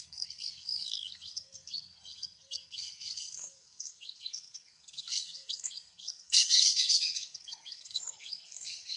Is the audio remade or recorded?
remade